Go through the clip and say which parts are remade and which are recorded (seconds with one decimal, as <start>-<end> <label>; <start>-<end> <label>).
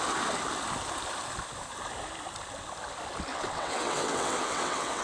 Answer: 0.0-3.3 recorded; 3.3-5.0 remade